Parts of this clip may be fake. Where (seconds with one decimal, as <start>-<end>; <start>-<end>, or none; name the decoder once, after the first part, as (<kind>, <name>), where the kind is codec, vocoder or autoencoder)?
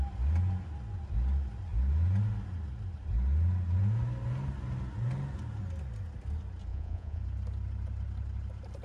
6.7-7.2 (vocoder, Vocos)